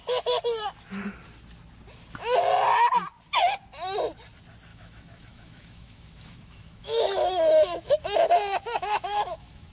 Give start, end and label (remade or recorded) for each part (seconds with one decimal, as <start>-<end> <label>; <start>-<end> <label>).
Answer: 0.0-4.7 recorded; 4.7-9.7 remade